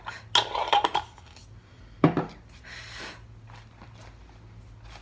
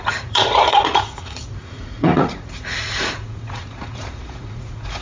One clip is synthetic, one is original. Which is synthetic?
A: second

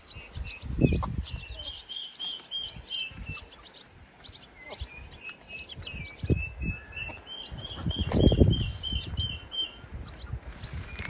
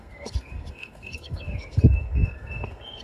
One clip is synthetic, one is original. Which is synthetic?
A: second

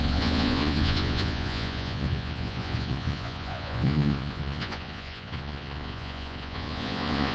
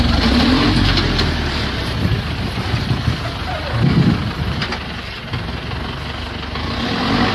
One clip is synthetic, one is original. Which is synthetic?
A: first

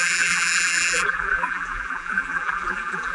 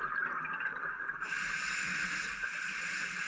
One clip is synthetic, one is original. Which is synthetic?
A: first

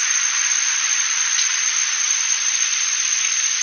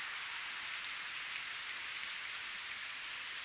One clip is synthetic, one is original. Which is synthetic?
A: first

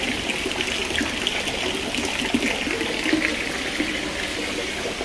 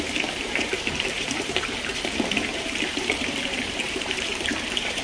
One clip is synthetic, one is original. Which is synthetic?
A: second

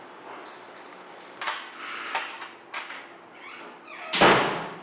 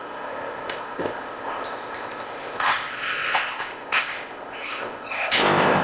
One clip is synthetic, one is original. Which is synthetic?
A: second